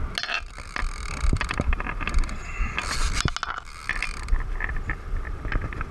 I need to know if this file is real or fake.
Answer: real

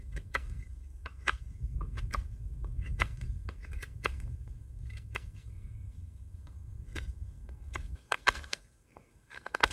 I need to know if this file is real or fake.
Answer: fake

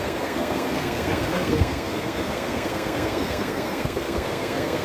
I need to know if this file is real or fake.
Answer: fake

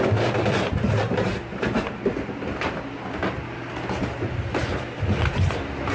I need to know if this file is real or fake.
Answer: real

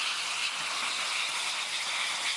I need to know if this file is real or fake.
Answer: real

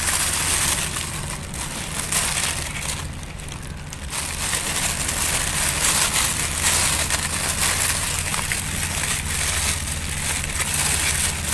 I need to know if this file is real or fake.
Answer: real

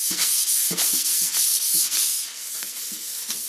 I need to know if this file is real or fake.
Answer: fake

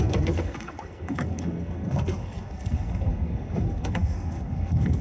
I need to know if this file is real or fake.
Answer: fake